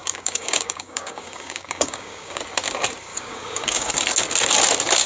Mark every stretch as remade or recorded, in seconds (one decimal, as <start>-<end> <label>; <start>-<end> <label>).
0.0-2.4 remade; 2.4-3.1 recorded; 3.1-3.9 remade; 3.9-5.1 recorded